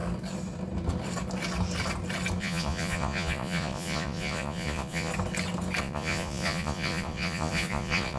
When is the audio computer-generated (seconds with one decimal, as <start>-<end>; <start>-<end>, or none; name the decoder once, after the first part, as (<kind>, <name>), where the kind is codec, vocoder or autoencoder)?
2.4-5.1 (vocoder, Vocos); 5.8-8.2